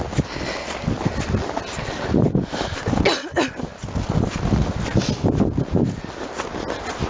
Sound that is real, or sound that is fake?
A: real